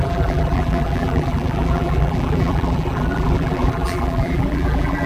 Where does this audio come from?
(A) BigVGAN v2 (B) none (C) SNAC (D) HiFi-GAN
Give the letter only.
A